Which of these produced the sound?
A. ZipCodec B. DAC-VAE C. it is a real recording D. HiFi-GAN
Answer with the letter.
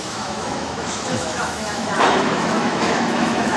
B